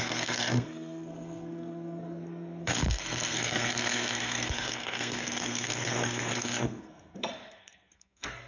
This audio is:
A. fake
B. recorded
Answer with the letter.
A